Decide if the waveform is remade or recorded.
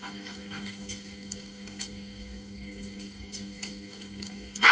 remade